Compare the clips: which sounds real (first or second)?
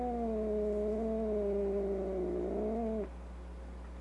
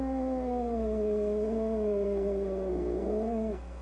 first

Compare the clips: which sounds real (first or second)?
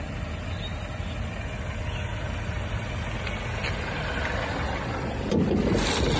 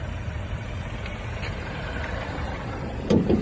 first